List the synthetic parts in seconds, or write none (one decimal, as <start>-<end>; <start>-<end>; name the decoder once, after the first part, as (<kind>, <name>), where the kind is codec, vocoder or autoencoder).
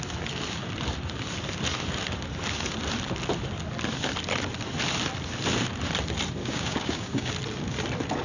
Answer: 6.4-7.3 (codec, DAC)